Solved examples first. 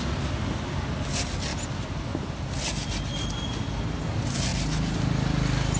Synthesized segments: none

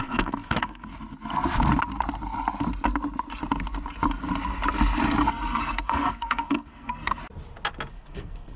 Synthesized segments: 0.0-0.9 (codec, SNAC); 5.3-7.2; 7.9-8.6

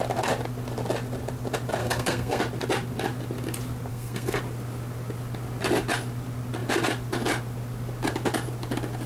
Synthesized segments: 1.8-2.4 (codec, SNAC); 3.9-4.4